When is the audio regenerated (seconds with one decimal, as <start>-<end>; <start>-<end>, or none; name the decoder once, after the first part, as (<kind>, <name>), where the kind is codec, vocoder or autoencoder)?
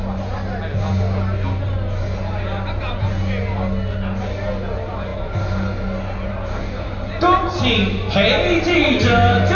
none